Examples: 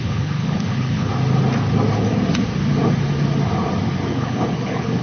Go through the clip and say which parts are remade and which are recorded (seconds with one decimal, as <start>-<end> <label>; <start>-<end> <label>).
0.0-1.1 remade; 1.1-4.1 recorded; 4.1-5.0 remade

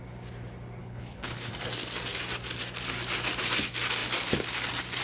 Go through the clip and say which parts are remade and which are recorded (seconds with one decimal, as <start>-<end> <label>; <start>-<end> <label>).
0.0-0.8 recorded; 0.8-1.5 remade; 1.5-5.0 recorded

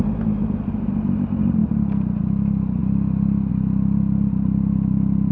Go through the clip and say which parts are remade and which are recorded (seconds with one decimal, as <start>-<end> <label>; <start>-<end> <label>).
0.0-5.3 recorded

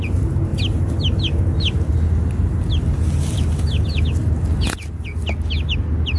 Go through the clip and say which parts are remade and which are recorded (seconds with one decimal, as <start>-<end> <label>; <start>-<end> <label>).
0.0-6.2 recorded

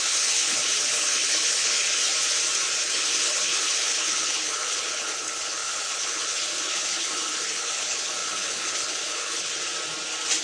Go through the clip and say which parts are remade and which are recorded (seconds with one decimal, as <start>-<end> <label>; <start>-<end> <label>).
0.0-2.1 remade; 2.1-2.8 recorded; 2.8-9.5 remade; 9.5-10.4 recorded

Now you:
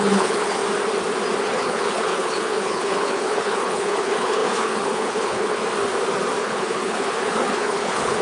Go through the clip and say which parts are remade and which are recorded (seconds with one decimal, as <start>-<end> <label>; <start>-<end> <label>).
0.0-0.6 remade; 0.6-1.4 recorded; 1.4-5.6 remade; 5.6-6.4 recorded; 6.4-8.2 remade

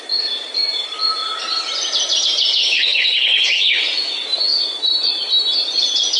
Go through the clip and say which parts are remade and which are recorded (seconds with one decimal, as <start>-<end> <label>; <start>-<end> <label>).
0.0-2.6 recorded; 2.6-3.8 remade; 3.8-6.2 recorded

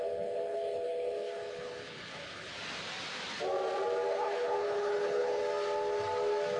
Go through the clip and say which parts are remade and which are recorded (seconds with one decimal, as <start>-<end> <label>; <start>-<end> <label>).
0.0-2.5 remade; 2.5-4.1 recorded; 4.1-5.4 remade; 5.4-6.6 recorded